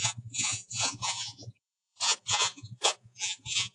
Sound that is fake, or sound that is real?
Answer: fake